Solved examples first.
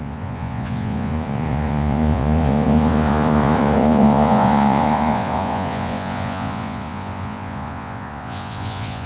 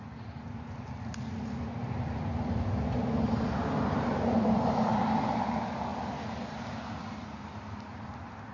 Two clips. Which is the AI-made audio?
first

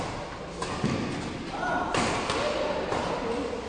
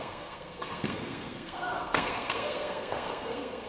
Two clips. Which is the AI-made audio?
second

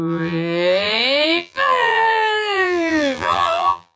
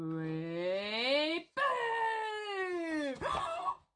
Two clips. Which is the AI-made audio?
first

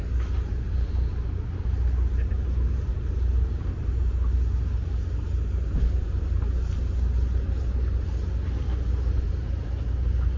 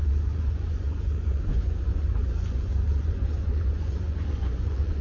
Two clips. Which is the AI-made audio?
second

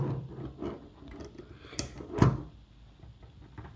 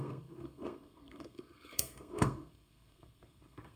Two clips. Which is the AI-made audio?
second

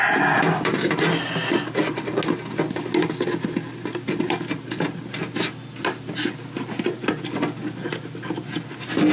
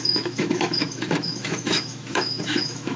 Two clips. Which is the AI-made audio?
second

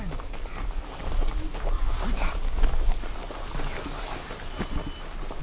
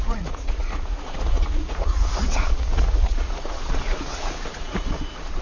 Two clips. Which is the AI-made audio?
second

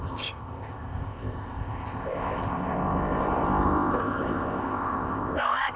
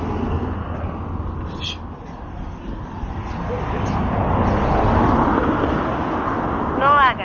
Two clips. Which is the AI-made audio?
first